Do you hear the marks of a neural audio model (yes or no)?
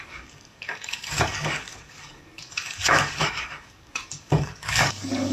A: yes